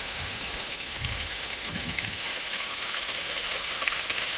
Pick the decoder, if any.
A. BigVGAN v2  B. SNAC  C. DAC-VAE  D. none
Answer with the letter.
C